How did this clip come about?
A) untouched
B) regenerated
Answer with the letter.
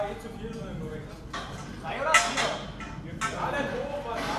A